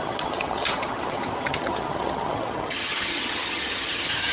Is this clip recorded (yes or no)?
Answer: no